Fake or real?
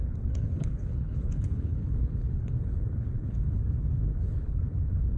fake